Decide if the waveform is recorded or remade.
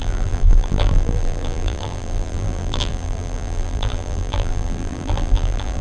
remade